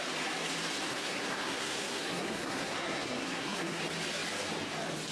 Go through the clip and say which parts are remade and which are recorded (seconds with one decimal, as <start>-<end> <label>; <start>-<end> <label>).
0.0-0.9 recorded; 0.9-3.8 remade; 3.8-5.1 recorded